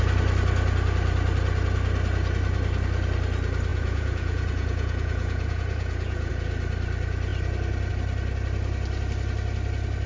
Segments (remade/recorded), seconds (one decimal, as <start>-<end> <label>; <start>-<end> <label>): 0.0-3.7 recorded; 3.7-6.3 remade; 6.3-10.1 recorded